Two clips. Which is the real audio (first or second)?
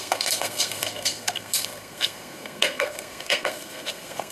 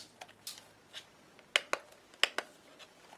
second